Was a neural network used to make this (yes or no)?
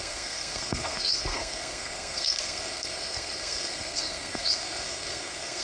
yes